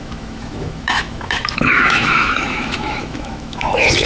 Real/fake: fake